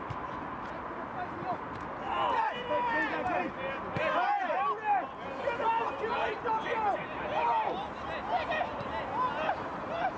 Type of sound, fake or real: real